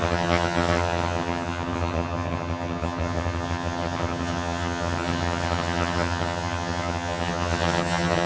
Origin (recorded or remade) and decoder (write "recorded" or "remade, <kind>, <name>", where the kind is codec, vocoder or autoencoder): remade, vocoder, HiFi-GAN